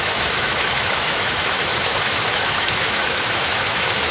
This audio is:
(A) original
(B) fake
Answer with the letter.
B